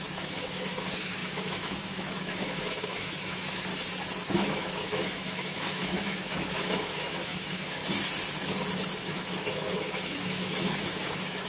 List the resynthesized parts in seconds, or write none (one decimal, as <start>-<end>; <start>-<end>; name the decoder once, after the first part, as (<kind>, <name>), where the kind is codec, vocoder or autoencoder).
0.0-3.7 (autoencoder, DAC-VAE); 4.3-7.8; 9.0-11.5